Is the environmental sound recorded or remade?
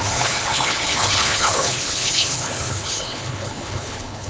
remade